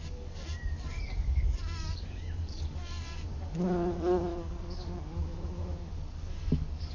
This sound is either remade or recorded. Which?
remade